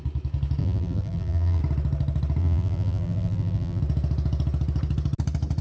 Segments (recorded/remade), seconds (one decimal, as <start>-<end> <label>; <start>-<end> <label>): 0.0-0.6 recorded; 0.6-1.6 remade; 1.6-2.4 recorded; 2.4-3.8 remade; 3.8-5.6 recorded